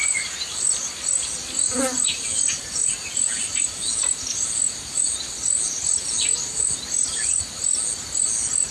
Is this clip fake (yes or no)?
no